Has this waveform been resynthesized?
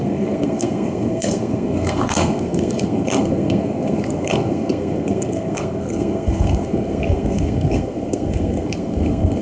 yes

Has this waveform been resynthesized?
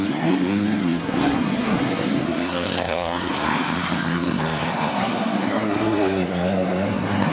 yes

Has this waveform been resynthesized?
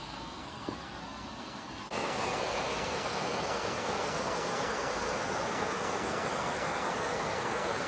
yes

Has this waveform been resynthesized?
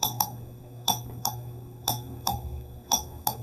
yes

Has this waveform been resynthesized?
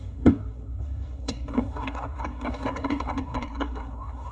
yes